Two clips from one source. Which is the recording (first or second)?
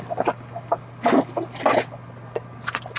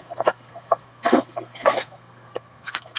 first